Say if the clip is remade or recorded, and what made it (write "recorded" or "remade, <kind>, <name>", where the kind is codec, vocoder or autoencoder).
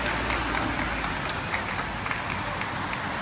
recorded